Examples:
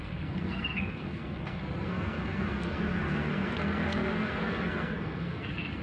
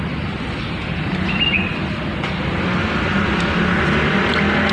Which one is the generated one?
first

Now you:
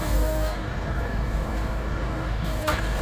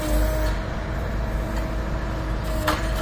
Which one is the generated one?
first